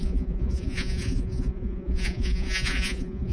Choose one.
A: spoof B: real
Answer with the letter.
A